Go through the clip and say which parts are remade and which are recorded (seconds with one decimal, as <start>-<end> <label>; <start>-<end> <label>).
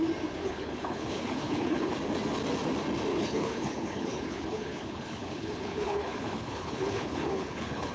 0.0-0.4 recorded; 0.4-1.9 remade; 1.9-3.1 recorded; 3.1-7.9 remade